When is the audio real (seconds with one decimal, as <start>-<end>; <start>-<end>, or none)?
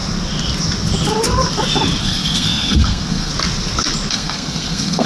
0.0-2.0; 3.3-4.1